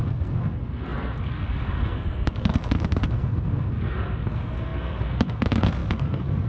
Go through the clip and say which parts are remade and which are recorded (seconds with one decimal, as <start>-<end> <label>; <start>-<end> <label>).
0.0-6.5 remade

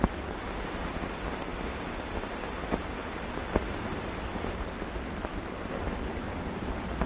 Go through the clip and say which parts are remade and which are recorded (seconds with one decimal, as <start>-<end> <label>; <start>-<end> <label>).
0.0-7.1 recorded

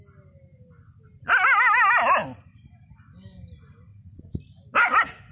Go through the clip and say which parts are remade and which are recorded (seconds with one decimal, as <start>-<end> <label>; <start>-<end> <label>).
0.0-3.9 recorded; 3.9-4.4 remade; 4.4-5.3 recorded

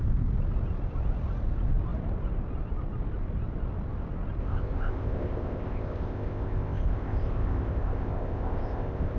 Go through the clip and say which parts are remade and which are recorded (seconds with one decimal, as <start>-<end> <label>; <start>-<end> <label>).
0.0-4.4 recorded; 4.4-9.2 remade

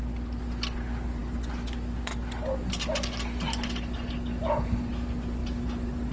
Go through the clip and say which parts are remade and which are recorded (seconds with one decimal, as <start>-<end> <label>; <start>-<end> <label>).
0.0-6.1 recorded

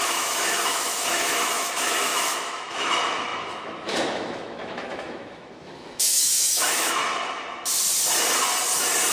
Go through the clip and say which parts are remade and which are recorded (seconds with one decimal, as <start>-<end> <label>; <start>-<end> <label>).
0.0-7.0 remade; 7.0-9.1 recorded

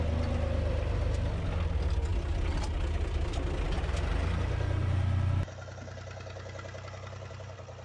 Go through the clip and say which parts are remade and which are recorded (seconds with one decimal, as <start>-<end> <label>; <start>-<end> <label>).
0.0-7.8 recorded